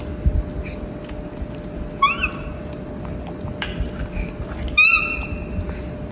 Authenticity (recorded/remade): recorded